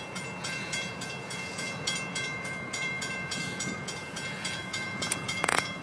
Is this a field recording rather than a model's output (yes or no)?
no